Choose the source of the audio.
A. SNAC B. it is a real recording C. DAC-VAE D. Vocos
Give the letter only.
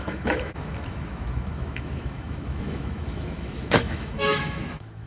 C